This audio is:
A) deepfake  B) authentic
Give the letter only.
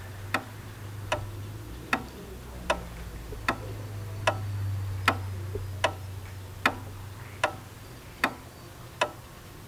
B